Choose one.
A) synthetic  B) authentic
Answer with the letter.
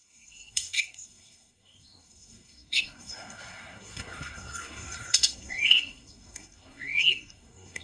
A